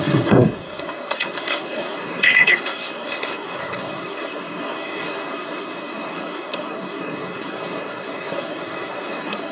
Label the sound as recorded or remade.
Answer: remade